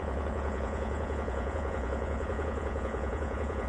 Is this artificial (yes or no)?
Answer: yes